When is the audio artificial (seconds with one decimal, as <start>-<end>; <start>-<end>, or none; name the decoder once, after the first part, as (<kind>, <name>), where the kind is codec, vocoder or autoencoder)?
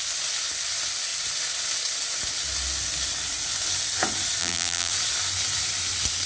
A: 4.4-4.9 (vocoder, BigVGAN v2)